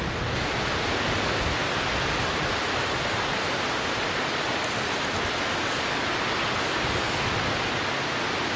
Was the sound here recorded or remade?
recorded